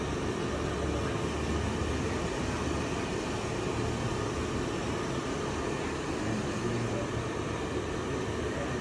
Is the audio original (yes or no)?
yes